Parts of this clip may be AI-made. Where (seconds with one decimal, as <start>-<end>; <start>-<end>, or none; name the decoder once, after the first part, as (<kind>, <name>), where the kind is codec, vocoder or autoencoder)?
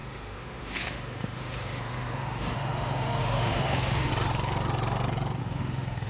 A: 0.0-4.1 (autoencoder, DAC-VAE); 5.4-6.1